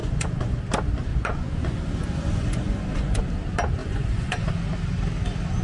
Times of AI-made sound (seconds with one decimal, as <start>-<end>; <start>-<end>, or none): 0.0-0.6; 1.1-3.2; 3.8-4.5